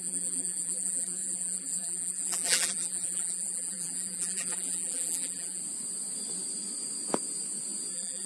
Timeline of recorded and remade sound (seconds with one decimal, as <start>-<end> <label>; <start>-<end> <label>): 0.0-5.6 remade; 5.6-7.9 recorded; 7.9-8.3 remade